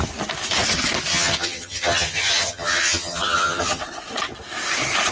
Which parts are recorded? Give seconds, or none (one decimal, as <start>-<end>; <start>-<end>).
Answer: 0.0-1.1; 3.8-5.1